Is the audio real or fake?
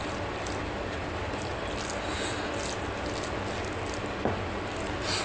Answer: real